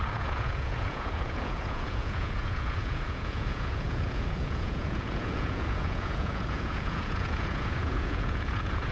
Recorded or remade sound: remade